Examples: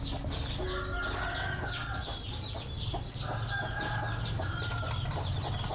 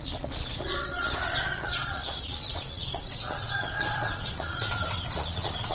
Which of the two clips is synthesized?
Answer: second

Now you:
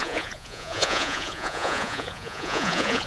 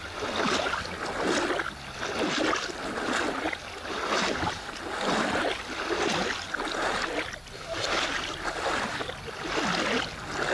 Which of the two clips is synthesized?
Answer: first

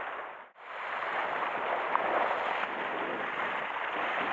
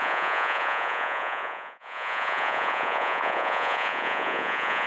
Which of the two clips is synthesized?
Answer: second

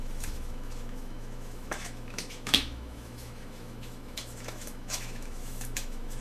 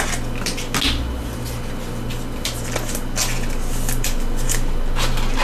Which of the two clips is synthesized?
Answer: first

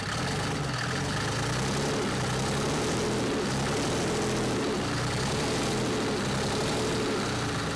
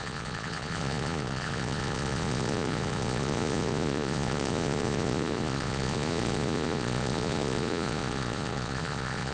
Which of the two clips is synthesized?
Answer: second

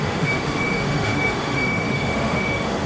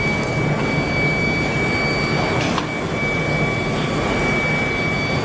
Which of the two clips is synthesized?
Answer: first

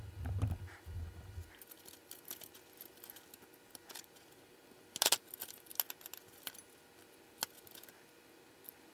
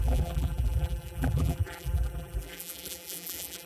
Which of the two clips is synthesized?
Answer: second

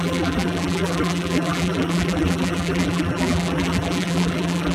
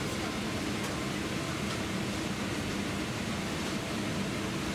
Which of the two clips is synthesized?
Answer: first